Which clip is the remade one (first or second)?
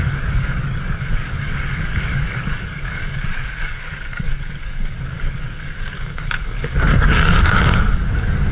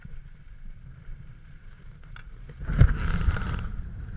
first